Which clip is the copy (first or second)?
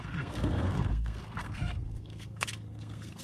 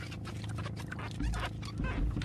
first